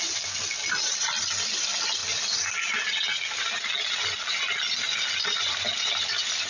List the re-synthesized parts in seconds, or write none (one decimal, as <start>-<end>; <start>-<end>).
none